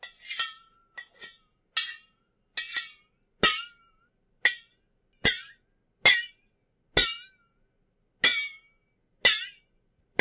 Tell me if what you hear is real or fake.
real